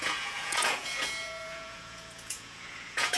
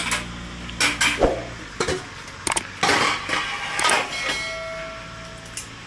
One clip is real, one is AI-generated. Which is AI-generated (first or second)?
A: first